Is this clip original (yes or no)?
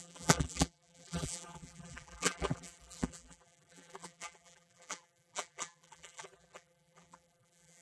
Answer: no